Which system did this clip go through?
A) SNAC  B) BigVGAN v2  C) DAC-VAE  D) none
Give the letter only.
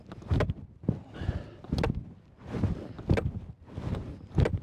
D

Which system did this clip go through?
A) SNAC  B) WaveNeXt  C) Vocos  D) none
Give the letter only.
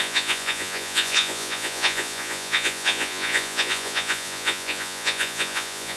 C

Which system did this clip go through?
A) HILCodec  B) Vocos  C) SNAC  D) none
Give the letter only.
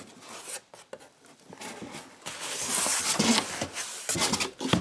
D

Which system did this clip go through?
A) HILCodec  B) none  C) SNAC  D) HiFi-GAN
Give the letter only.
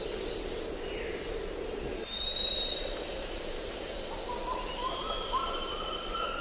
B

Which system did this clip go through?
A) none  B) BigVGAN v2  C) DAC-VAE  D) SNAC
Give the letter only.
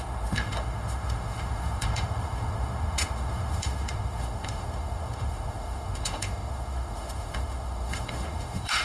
C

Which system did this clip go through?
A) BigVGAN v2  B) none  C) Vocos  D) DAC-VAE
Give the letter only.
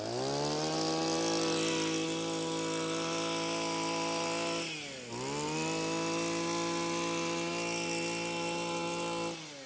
B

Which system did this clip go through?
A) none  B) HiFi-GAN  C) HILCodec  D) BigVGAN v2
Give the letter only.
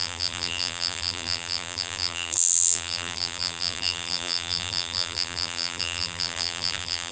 D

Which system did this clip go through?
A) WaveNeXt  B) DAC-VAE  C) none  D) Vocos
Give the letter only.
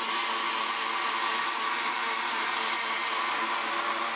C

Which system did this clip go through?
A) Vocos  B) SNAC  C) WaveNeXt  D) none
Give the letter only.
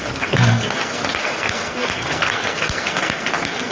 B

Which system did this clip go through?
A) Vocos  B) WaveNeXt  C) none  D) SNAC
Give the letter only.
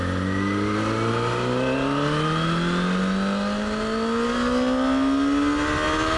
C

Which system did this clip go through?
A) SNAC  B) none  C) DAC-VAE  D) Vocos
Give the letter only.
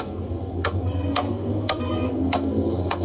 A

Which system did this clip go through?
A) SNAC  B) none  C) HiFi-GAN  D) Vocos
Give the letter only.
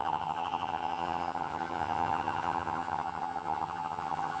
C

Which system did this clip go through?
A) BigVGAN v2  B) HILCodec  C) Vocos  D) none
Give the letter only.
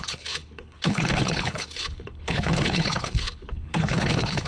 B